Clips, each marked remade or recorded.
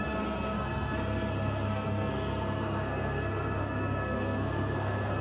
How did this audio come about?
remade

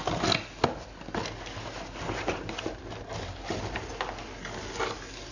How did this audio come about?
recorded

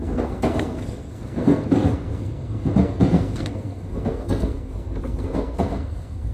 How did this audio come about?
remade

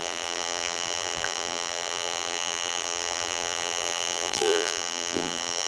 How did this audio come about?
remade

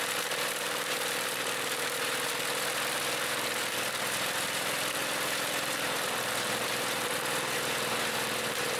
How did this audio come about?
remade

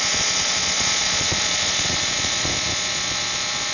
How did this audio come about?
remade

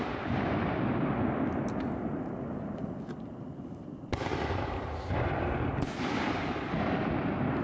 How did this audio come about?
recorded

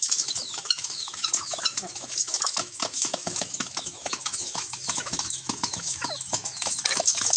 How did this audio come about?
remade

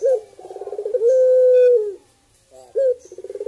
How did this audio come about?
recorded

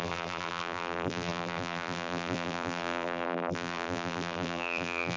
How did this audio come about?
remade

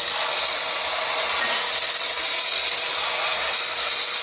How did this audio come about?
recorded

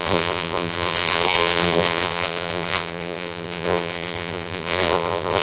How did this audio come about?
remade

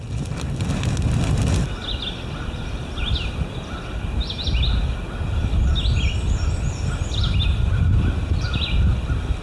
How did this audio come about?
recorded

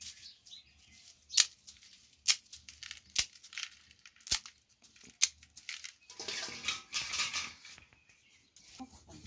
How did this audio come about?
recorded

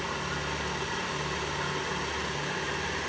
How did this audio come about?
recorded